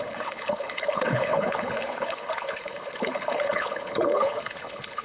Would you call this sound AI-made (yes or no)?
yes